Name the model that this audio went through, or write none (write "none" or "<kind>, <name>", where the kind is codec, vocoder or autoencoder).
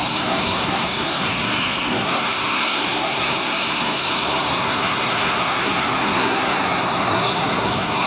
codec, SNAC